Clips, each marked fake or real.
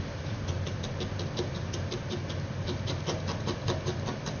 real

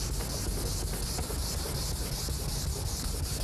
real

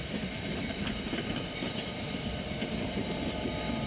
fake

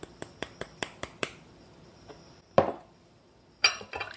fake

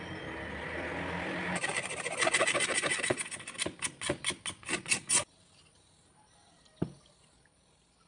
real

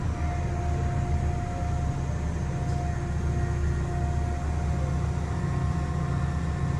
real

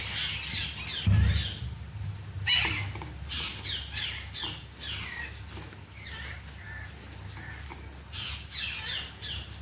real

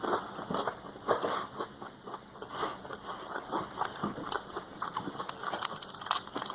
real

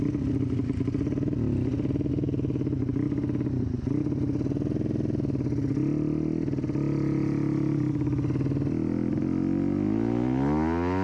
real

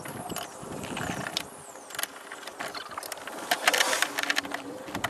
fake